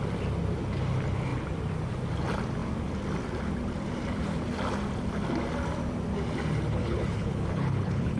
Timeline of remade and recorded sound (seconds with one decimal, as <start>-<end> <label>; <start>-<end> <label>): 0.0-6.8 recorded; 6.8-8.2 remade